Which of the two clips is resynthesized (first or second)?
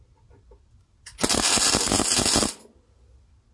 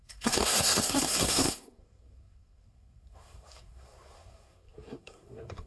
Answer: second